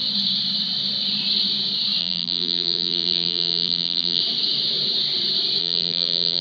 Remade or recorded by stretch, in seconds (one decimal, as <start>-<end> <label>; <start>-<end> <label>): 0.0-2.0 recorded; 2.0-4.2 remade; 4.2-5.6 recorded; 5.6-6.4 remade

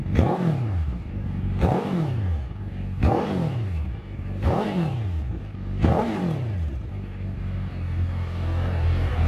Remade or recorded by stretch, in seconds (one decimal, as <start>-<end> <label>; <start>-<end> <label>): 0.0-6.2 remade; 6.2-6.9 recorded; 6.9-9.3 remade

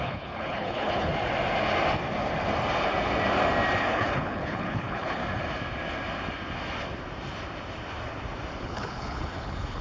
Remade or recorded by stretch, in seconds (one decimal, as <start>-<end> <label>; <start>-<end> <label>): 0.0-1.1 remade; 1.1-3.8 recorded; 3.8-5.2 remade; 5.2-8.6 recorded; 8.6-9.8 remade

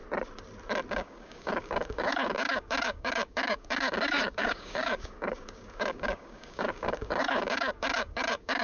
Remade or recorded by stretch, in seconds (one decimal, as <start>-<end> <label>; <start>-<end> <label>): 0.0-0.9 recorded; 0.9-8.6 remade